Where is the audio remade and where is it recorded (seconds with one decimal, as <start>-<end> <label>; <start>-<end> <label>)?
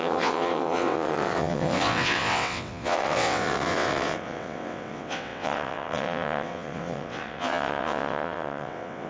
0.0-9.1 remade